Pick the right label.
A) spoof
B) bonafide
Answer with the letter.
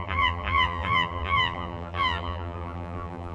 A